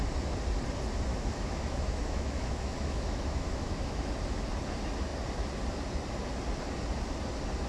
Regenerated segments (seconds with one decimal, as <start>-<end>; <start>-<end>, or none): 1.1-4.0